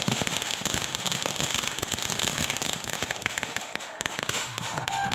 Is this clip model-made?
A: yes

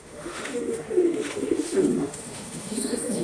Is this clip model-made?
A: yes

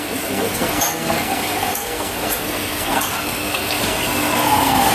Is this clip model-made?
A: yes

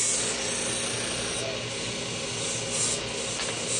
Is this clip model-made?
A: no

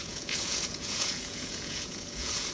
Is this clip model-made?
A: yes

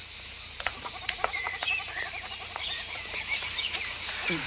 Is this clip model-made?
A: yes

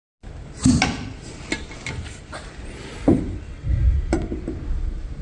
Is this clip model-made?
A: no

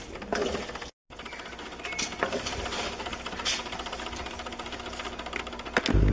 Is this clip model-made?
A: no